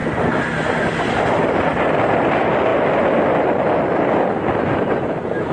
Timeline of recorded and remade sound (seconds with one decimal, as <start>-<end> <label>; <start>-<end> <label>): 0.0-0.8 recorded; 0.8-2.7 remade; 2.7-4.7 recorded; 4.7-5.5 remade